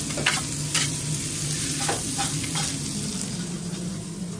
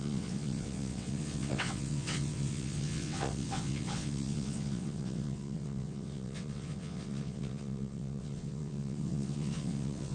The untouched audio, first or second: first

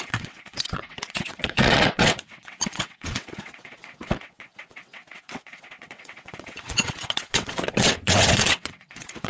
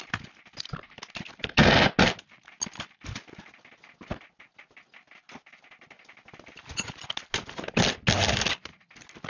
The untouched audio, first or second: second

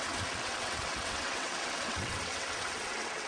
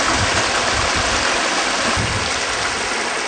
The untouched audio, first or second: second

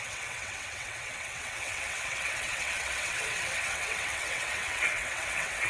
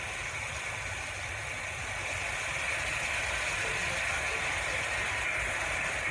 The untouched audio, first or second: second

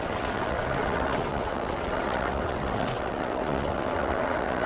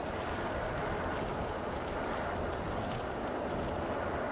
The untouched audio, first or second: second